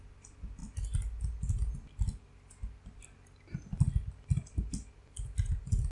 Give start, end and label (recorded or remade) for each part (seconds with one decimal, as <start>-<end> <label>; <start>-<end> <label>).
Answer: 0.0-5.9 recorded